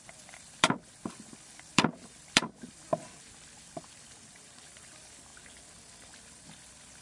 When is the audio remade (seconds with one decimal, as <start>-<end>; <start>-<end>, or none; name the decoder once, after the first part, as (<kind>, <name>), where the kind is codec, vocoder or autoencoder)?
0.0-2.9 (vocoder, BigVGAN v2); 4.1-5.3; 6.2-7.0